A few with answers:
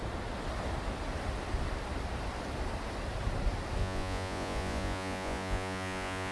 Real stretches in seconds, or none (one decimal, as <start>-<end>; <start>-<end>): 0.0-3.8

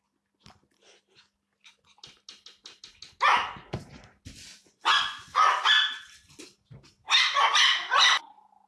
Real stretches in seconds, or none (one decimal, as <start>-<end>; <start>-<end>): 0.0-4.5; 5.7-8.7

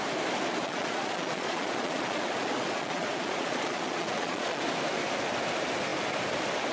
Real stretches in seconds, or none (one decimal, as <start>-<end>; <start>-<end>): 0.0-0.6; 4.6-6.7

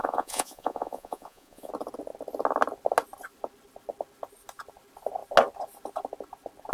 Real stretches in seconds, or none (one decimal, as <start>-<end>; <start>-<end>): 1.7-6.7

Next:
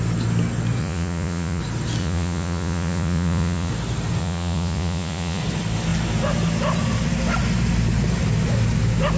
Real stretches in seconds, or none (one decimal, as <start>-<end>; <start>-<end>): 0.0-0.8; 1.6-2.0; 3.7-4.2; 5.4-9.2

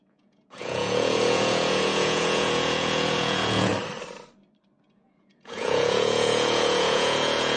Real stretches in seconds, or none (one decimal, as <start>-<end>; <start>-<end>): 3.7-4.8